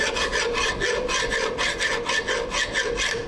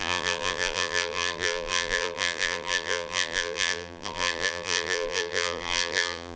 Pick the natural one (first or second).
first